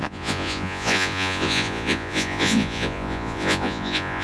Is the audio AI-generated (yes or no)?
yes